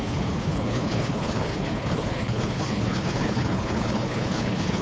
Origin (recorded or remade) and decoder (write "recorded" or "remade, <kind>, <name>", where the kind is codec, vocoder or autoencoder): remade, codec, HILCodec